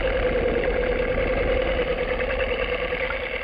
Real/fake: real